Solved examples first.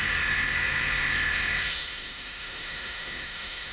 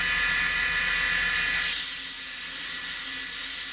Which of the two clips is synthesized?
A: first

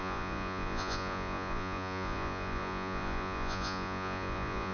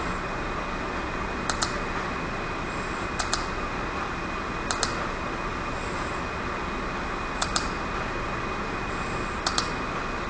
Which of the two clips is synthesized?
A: first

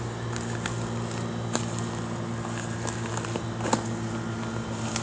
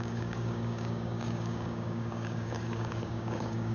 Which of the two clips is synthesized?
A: second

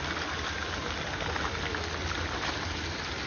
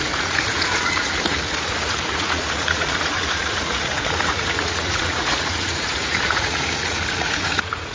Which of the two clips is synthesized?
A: second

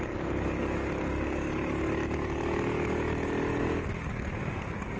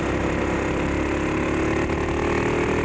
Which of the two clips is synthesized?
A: first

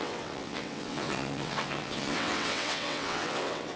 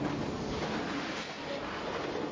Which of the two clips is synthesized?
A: first